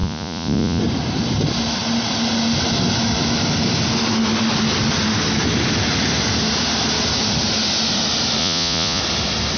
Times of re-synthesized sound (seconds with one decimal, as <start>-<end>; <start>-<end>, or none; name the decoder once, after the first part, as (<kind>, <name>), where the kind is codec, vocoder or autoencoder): 0.0-0.8 (vocoder, Vocos); 8.4-9.0